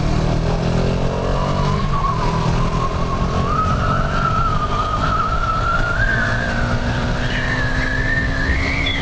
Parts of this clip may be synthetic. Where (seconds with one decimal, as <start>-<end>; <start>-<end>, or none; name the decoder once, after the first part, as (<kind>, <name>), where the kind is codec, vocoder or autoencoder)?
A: none